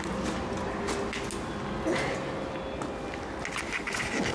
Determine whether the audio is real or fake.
real